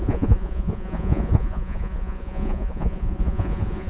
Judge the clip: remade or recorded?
remade